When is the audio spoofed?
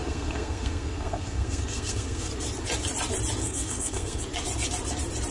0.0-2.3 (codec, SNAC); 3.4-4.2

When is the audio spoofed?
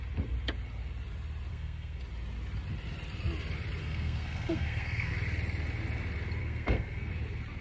1.5-2.0 (codec, SNAC); 3.8-5.1; 6.4-7.1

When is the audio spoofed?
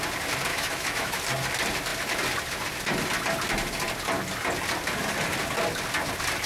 0.5-1.2 (autoencoder, DAC-VAE)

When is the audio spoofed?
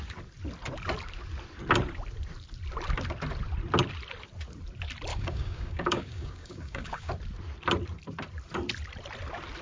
5.1-7.1 (codec, DAC)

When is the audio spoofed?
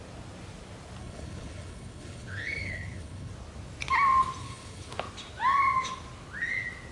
1.0-3.3 (codec, HILCodec); 4.4-4.9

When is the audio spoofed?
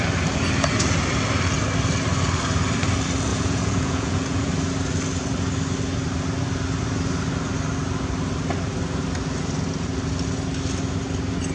3.3-4.5 (vocoder, Vocos)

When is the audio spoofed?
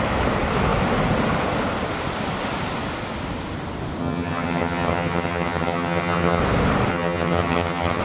4.0-6.4 (vocoder, HiFi-GAN); 6.9-8.0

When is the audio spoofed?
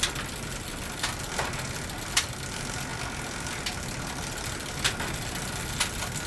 none